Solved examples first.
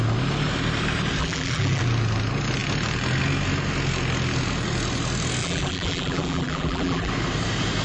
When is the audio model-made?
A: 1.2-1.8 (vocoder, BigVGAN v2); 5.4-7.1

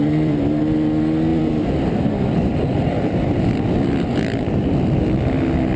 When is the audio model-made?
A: 0.0-0.6 (vocoder, BigVGAN v2); 1.3-4.5

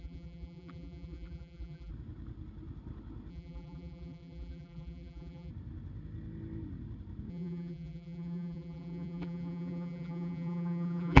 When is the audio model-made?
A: 0.0-1.9 (vocoder, BigVGAN v2); 3.3-5.5; 7.3-11.2

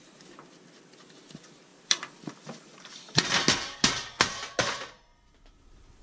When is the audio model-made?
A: 1.7-3.2 (vocoder, BigVGAN v2)

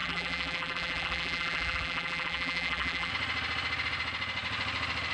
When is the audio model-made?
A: 0.0-3.1 (vocoder, BigVGAN v2)

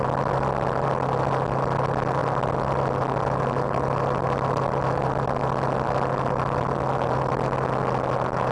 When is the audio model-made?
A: none

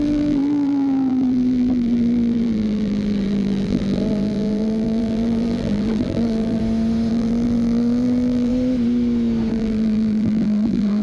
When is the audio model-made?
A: 0.0-6.6 (vocoder, BigVGAN v2); 7.1-8.5; 9.5-11.0

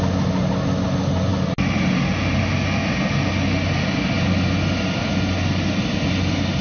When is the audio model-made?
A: none